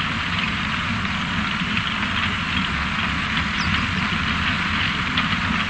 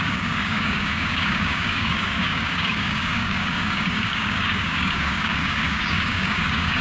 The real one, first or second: first